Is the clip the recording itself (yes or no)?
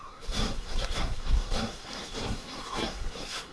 no